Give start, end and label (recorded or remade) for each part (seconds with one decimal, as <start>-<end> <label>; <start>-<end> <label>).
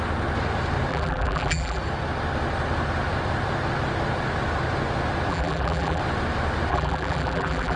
0.0-0.9 recorded; 0.9-1.8 remade; 1.8-5.3 recorded; 5.3-6.0 remade; 6.0-6.7 recorded; 6.7-7.8 remade